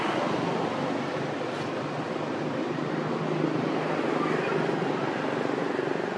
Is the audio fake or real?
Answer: real